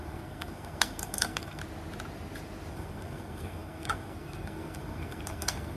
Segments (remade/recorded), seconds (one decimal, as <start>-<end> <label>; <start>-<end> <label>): 0.0-1.6 remade; 1.6-2.7 recorded; 2.7-5.8 remade